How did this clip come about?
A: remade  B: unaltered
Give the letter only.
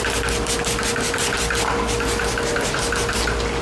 B